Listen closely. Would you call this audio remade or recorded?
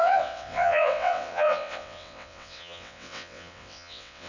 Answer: remade